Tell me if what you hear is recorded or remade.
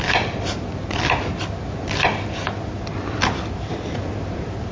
remade